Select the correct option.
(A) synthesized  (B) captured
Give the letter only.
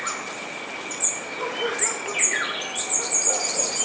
B